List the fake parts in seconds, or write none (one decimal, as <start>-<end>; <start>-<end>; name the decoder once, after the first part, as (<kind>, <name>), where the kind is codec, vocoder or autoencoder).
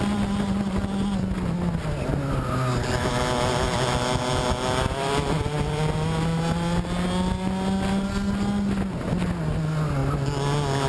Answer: none